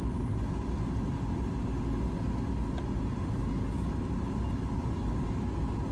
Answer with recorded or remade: recorded